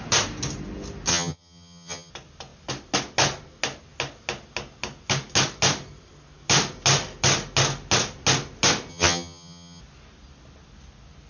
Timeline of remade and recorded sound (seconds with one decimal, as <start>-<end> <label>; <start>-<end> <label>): 0.0-1.1 recorded; 1.1-2.1 remade; 2.1-8.9 recorded; 8.9-9.8 remade; 9.8-11.3 recorded